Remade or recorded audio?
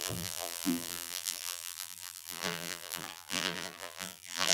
remade